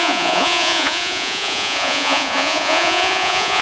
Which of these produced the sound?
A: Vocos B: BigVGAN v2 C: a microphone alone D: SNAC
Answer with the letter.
A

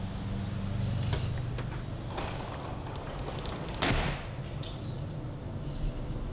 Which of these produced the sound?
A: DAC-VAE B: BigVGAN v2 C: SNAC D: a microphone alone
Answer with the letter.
D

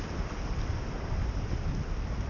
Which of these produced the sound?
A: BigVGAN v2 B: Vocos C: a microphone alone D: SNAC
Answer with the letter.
C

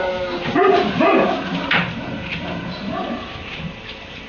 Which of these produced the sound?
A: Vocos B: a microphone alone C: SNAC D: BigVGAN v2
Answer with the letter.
B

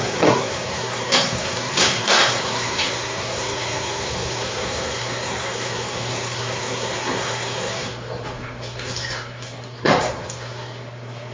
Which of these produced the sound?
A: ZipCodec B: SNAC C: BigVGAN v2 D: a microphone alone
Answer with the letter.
B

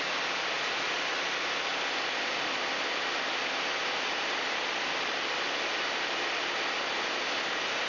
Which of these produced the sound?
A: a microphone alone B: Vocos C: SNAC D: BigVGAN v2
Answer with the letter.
A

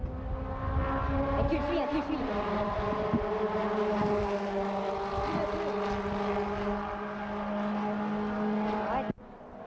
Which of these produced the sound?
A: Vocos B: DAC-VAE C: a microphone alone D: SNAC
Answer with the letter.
C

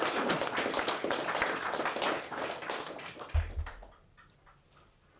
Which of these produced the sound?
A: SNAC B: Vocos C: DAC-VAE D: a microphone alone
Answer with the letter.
D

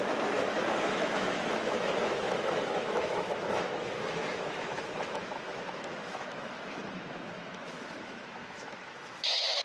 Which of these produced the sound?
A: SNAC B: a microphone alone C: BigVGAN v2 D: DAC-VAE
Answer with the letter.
D